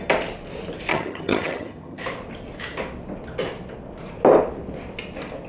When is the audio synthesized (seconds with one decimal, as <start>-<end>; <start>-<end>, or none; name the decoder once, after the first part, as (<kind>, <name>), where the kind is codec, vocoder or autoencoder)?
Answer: 0.9-2.0 (vocoder, HiFi-GAN)